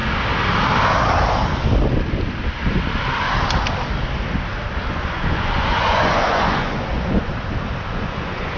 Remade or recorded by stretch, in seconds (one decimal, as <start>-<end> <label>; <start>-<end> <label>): 0.0-4.9 recorded; 4.9-7.3 remade; 7.3-7.9 recorded; 7.9-8.6 remade